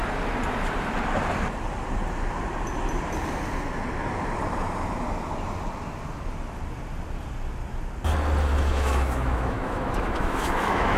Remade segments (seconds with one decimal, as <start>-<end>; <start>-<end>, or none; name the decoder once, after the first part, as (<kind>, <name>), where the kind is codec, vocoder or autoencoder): 8.5-11.0 (autoencoder, DAC-VAE)